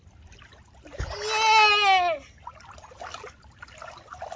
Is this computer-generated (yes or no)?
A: no